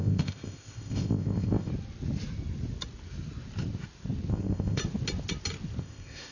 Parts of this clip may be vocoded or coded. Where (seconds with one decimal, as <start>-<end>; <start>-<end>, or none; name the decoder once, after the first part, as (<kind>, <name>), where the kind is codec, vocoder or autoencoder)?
0.0-1.7 (codec, ZipCodec); 4.3-4.8; 5.8-6.3

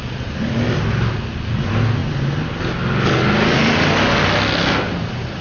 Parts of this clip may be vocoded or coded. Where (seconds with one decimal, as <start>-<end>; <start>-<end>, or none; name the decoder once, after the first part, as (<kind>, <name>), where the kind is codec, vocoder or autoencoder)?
none